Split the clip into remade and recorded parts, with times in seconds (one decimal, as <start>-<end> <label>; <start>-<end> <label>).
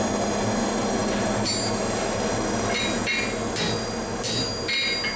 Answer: 0.0-0.8 recorded; 0.8-1.4 remade; 1.4-5.2 recorded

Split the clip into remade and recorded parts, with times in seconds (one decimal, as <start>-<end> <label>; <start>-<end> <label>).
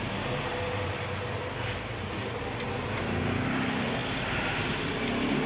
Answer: 0.0-5.5 recorded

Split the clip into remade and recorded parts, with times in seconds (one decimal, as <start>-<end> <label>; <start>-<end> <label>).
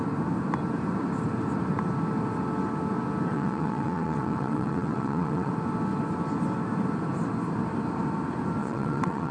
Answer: 0.0-3.3 recorded; 3.3-5.5 remade; 5.5-8.6 recorded; 8.6-9.3 remade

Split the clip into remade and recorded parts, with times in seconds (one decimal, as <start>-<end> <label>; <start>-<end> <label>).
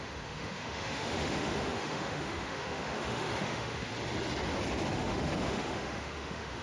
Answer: 0.0-3.9 remade; 3.9-4.9 recorded; 4.9-6.6 remade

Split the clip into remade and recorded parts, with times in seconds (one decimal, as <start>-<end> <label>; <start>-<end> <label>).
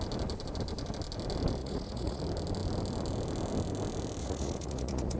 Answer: 0.0-1.6 recorded; 1.6-2.2 remade; 2.2-4.2 recorded; 4.2-5.2 remade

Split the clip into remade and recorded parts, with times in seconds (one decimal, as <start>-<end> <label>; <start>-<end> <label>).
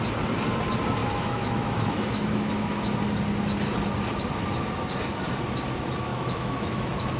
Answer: 0.0-1.0 recorded; 1.0-2.9 remade; 2.9-6.1 recorded; 6.1-7.2 remade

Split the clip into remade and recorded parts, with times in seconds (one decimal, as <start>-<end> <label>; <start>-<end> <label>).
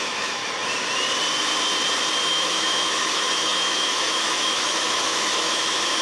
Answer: 0.0-0.4 remade; 0.4-2.2 recorded; 2.2-6.0 remade